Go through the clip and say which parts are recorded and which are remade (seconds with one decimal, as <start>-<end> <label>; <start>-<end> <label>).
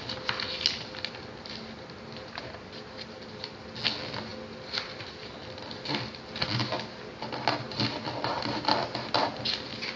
0.0-10.0 recorded